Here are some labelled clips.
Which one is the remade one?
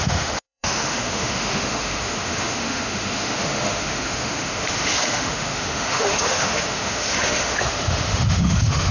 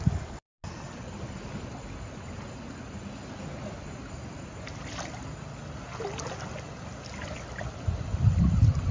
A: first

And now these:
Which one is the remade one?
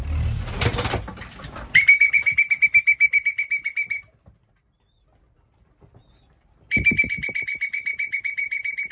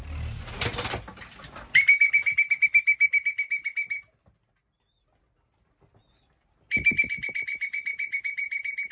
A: first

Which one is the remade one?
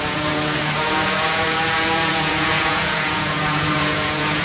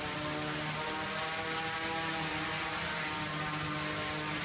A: first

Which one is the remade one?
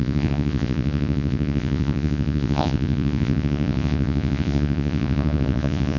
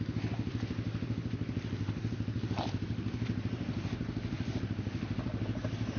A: first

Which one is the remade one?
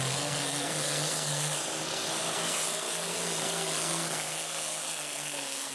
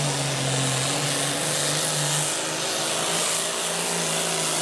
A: first